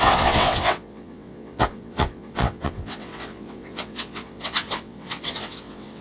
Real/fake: fake